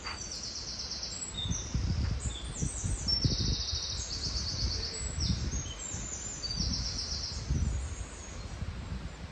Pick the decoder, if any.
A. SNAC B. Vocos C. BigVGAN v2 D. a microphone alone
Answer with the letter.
D